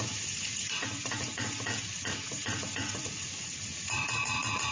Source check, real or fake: fake